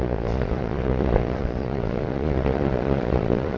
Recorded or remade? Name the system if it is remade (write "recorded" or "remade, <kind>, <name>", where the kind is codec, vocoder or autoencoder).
remade, vocoder, Vocos